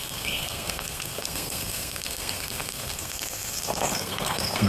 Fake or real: fake